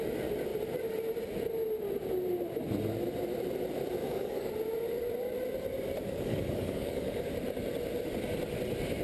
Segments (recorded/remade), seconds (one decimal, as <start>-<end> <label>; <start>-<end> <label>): 0.0-4.0 recorded; 4.0-4.5 remade; 4.5-6.0 recorded; 6.0-7.3 remade; 7.3-9.0 recorded